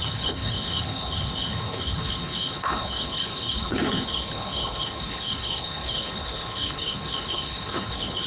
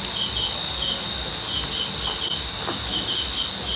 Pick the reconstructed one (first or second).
first